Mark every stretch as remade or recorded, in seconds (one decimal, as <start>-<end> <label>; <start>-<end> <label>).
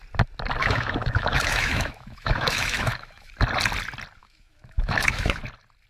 0.0-0.6 recorded; 0.6-3.3 remade; 3.3-4.2 recorded; 4.2-5.4 remade; 5.4-5.9 recorded